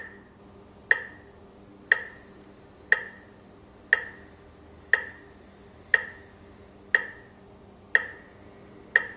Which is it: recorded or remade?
recorded